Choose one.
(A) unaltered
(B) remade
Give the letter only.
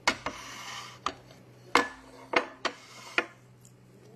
A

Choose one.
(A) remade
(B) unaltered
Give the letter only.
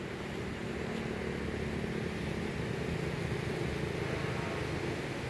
B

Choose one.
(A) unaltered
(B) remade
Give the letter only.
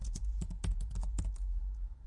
A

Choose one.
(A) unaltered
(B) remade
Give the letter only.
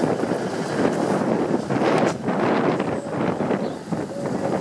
A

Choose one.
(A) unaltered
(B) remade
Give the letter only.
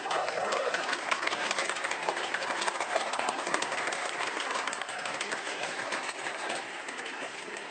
B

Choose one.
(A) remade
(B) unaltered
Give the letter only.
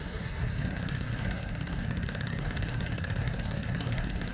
A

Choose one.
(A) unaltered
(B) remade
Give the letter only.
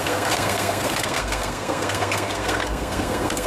B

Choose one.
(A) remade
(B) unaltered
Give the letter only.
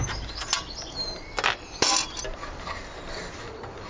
B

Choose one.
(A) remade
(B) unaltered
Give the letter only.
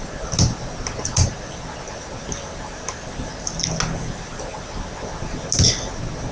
B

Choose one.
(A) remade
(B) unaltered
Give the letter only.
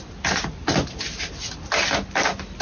B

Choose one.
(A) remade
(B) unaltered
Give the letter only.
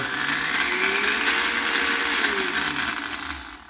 B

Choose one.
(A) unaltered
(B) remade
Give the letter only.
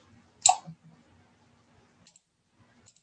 A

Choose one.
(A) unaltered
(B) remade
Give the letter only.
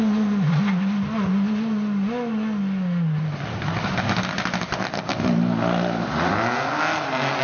A